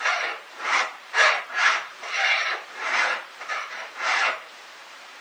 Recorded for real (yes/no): no